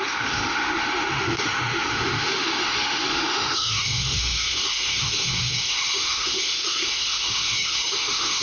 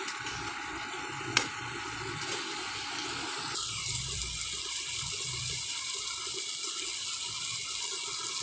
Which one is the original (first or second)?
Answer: second